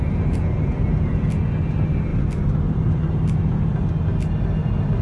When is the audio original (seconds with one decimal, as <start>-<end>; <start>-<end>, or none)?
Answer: 0.0-5.0